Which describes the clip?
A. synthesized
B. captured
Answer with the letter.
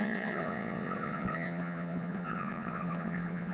A